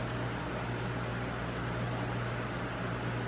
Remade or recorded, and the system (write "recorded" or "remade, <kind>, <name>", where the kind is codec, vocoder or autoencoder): recorded